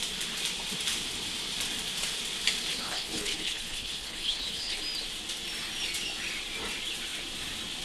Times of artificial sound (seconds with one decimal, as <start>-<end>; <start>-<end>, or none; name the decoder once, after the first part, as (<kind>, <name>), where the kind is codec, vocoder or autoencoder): 2.7-4.8 (codec, HILCodec)